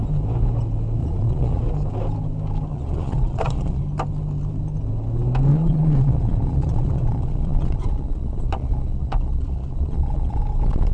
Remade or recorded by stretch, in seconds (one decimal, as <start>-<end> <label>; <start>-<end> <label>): 0.0-1.0 recorded; 1.0-1.6 remade; 1.6-2.7 recorded; 2.7-3.8 remade; 3.8-5.5 recorded; 5.5-10.4 remade; 10.4-10.9 recorded